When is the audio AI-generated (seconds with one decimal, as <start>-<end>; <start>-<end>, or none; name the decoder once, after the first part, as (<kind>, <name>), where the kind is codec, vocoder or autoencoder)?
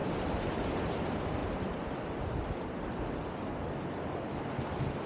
0.0-0.7 (vocoder, BigVGAN v2)